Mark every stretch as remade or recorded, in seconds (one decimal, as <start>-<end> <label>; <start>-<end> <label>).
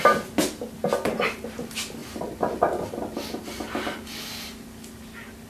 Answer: 0.0-5.5 recorded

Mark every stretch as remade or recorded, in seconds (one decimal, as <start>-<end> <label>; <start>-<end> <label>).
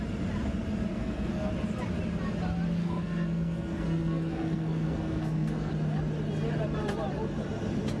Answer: 0.0-0.9 recorded; 0.9-1.5 remade; 1.5-2.8 recorded; 2.8-5.7 remade; 5.7-8.0 recorded